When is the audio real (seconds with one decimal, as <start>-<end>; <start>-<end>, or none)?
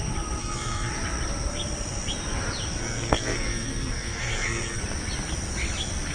0.0-0.4; 0.9-2.8; 4.8-6.1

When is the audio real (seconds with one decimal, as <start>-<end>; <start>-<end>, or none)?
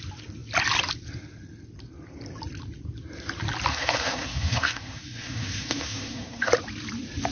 0.0-3.7; 6.5-7.3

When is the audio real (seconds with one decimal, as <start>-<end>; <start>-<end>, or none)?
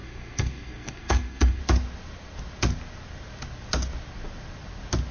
1.6-5.1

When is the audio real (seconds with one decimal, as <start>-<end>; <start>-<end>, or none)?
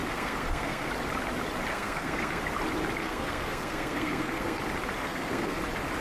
0.9-1.7; 2.4-3.0; 4.6-5.0; 5.6-6.0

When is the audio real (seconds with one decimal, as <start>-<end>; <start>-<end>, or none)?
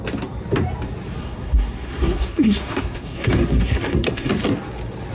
0.0-1.2; 4.3-5.1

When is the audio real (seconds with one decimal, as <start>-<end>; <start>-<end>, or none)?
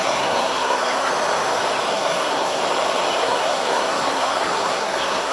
1.1-1.9; 2.6-3.2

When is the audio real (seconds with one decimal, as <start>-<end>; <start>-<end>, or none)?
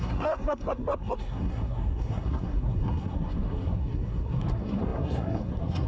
none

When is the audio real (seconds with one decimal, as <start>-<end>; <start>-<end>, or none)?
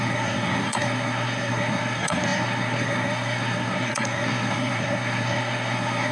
none